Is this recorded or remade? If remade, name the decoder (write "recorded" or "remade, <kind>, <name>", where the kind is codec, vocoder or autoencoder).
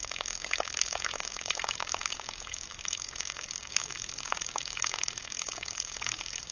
remade, codec, DAC